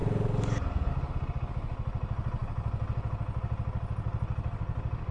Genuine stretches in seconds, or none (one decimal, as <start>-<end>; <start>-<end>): 0.9-5.1